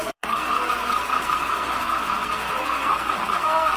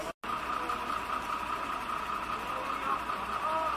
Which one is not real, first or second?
first